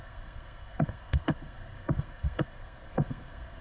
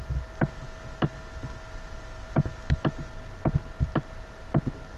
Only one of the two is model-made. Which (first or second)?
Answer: first